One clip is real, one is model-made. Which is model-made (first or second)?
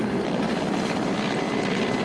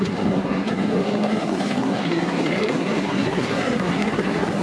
second